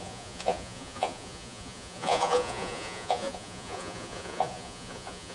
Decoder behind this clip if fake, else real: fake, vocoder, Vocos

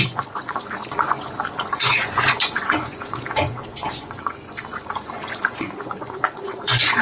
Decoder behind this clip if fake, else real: fake, vocoder, Vocos